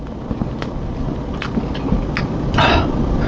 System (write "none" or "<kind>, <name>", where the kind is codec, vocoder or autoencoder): none